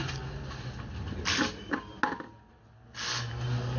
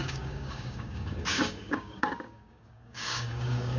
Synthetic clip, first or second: second